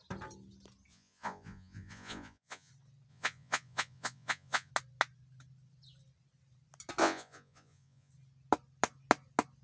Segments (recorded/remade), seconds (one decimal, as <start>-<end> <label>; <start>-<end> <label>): 0.0-0.9 recorded; 0.9-2.7 remade; 2.7-3.1 recorded; 3.1-4.7 remade; 4.7-7.0 recorded; 7.0-8.1 remade; 8.1-9.6 recorded